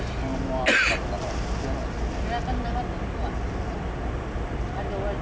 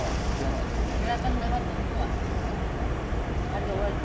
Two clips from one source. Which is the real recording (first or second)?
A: first